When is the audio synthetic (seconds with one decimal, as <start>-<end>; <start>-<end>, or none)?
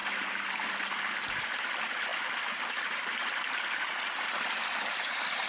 none